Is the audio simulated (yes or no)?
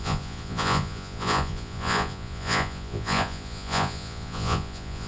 yes